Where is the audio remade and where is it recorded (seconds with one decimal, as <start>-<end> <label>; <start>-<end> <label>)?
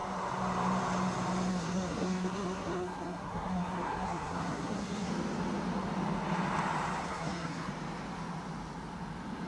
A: 0.0-1.5 recorded; 1.5-5.1 remade; 5.1-7.0 recorded; 7.0-7.7 remade; 7.7-9.5 recorded